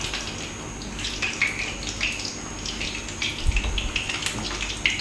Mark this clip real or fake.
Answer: real